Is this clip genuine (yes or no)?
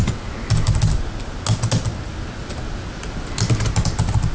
yes